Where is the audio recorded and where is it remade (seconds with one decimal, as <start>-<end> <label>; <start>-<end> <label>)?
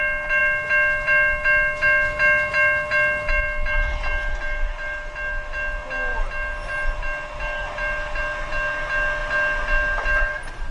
0.0-10.7 recorded